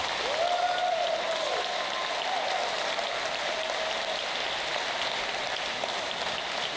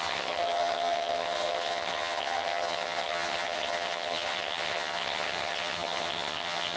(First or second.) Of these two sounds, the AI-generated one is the second